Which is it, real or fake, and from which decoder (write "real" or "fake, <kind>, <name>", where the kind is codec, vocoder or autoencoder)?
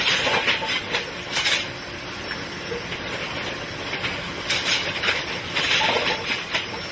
real